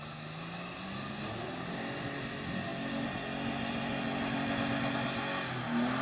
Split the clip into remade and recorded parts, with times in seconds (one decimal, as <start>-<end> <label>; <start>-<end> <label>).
0.0-6.0 recorded